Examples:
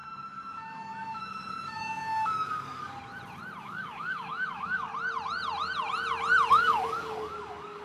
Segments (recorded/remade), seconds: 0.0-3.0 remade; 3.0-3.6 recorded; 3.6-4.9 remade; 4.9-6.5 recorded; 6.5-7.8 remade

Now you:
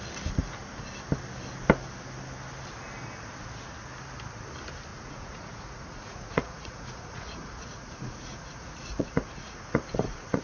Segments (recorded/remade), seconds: 0.0-4.9 recorded; 4.9-10.4 remade